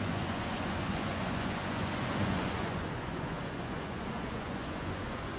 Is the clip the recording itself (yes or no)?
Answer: no